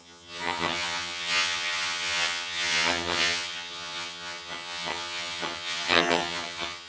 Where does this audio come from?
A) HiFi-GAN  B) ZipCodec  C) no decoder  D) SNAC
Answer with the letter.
A